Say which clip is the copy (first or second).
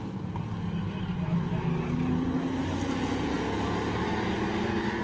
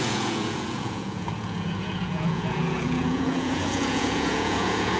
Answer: second